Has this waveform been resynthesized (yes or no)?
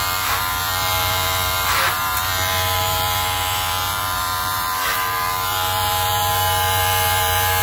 yes